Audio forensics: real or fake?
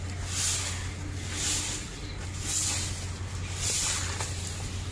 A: real